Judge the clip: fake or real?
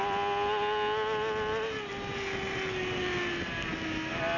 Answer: real